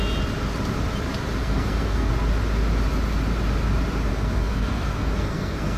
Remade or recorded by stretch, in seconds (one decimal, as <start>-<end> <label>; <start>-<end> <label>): 0.0-1.4 recorded; 1.4-2.1 remade; 2.1-4.1 recorded; 4.1-5.8 remade